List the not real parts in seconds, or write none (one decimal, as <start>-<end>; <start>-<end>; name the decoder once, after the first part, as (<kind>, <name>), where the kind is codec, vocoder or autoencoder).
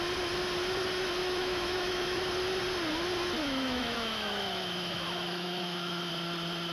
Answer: 1.2-2.2 (autoencoder, DAC-VAE); 3.4-6.1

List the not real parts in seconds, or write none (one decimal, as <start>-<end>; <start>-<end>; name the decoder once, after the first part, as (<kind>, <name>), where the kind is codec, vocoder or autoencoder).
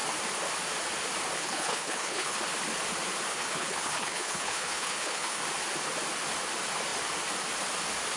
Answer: 1.4-2.4 (codec, HILCodec); 3.3-5.4